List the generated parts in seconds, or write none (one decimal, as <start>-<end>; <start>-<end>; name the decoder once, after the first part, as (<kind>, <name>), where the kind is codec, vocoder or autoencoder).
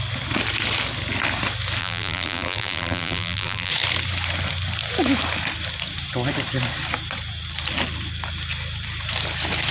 1.8-3.7 (vocoder, BigVGAN v2)